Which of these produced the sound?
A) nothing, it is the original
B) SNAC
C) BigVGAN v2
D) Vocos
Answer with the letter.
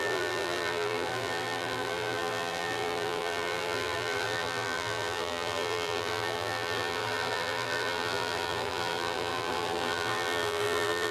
C